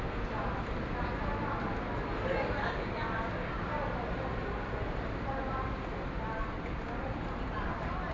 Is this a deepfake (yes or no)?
no